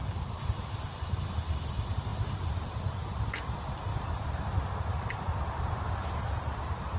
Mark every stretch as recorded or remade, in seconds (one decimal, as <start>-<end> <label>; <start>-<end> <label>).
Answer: 0.0-1.7 remade; 1.7-3.9 recorded; 3.9-6.6 remade; 6.6-7.0 recorded